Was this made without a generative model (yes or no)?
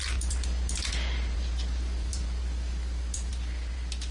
yes